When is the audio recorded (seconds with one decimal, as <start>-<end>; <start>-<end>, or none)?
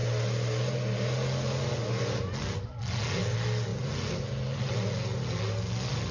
0.0-6.1